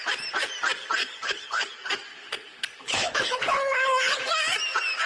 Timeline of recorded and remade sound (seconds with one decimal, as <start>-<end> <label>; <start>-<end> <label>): 0.0-1.0 recorded; 1.0-1.7 remade; 1.7-2.1 recorded; 2.1-4.2 remade; 4.2-5.1 recorded